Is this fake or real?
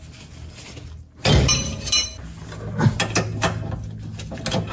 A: real